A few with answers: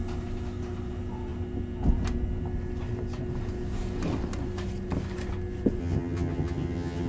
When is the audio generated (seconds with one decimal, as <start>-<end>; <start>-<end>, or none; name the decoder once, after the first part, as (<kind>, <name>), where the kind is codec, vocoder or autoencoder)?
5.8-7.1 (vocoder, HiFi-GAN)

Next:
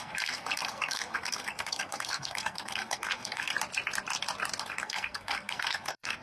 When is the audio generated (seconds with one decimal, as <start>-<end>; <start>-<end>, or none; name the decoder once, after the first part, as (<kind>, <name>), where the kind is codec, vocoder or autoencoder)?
0.0-3.5 (codec, SNAC); 4.6-6.2

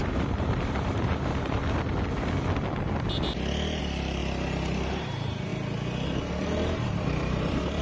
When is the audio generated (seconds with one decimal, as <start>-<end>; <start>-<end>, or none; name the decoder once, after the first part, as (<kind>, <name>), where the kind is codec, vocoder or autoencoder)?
0.0-1.6 (vocoder, BigVGAN v2); 3.8-4.2; 4.9-5.5; 6.4-7.8